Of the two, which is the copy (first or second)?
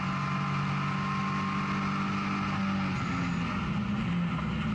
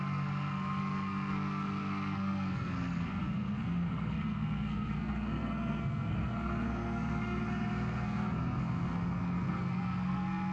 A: second